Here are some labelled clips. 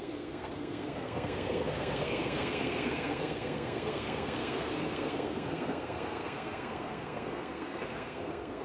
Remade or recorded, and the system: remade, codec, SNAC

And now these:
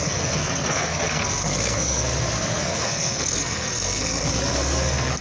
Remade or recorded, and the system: remade, codec, SNAC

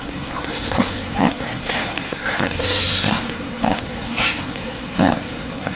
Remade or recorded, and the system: remade, codec, SNAC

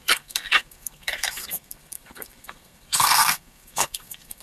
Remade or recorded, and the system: remade, codec, SNAC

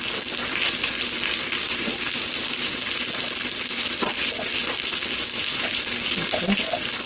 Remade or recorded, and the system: recorded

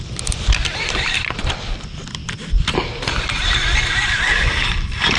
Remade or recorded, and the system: recorded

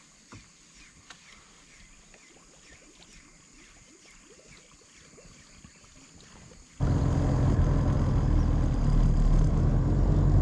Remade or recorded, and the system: recorded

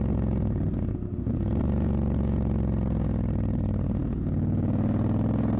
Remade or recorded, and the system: recorded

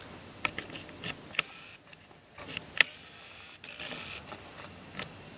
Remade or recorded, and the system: recorded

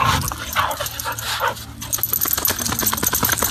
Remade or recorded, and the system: recorded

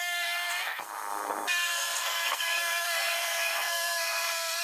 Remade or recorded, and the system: remade, codec, SNAC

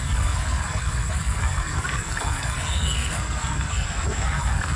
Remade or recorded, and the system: remade, codec, SNAC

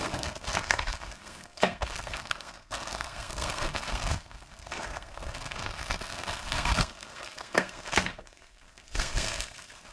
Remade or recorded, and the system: remade, codec, SNAC